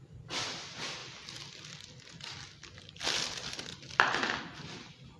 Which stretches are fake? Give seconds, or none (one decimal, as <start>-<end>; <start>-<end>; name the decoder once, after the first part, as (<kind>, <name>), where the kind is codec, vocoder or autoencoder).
none